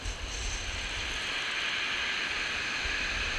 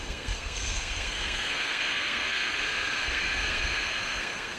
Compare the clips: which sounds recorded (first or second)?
first